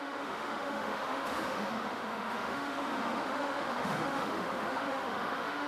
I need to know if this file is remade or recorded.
remade